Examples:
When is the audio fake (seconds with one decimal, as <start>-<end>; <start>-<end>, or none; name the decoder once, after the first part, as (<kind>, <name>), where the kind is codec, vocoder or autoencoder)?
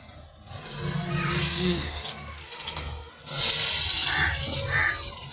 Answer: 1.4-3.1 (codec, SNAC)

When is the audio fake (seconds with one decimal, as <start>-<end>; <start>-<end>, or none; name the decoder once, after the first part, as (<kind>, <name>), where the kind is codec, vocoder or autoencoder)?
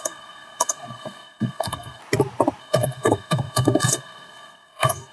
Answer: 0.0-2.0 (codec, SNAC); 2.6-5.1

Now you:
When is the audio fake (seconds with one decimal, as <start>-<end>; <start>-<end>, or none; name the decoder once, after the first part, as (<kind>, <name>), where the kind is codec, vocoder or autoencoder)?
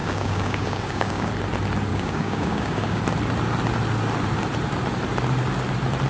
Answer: 0.0-1.3 (codec, DAC); 1.9-3.0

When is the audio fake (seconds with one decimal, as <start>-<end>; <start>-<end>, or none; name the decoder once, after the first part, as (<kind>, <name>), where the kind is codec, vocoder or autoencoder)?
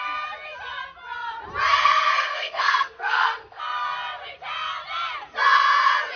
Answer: 1.8-3.6 (codec, SNAC)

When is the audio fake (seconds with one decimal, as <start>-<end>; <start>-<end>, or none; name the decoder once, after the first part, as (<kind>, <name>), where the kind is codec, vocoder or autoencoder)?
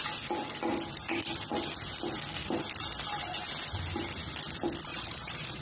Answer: 4.9-5.6 (vocoder, Vocos)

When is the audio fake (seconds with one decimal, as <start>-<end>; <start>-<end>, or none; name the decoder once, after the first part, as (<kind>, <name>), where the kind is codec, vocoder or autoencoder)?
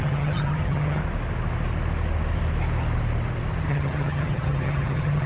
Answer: 0.0-1.0 (vocoder, HiFi-GAN); 3.7-5.3